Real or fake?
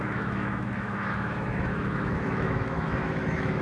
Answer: fake